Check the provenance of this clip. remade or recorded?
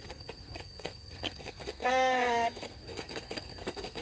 remade